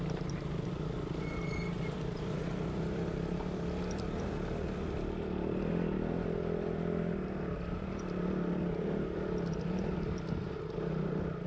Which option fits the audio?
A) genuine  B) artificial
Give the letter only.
A